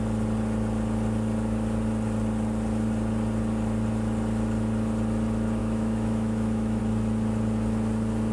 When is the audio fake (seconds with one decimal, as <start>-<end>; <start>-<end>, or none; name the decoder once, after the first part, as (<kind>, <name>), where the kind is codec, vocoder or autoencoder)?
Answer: 5.6-6.8 (autoencoder, DAC-VAE)